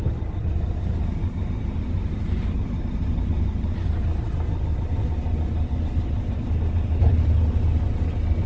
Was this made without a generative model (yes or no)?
yes